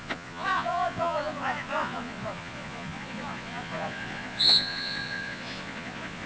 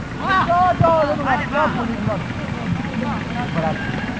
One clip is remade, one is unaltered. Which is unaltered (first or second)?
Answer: second